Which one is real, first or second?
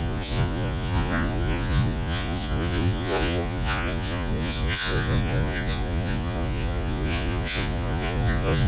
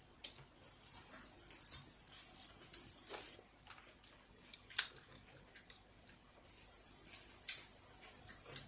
second